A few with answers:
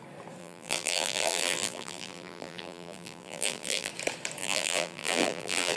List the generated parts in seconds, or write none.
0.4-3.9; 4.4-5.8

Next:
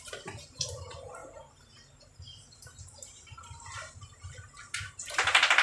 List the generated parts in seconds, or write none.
0.0-5.6

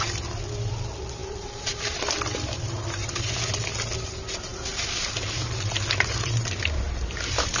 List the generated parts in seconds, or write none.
1.2-3.3

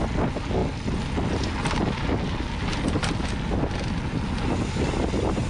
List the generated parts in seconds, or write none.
none

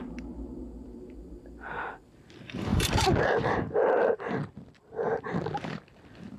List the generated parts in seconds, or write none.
2.7-4.3

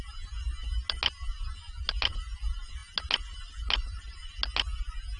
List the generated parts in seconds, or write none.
none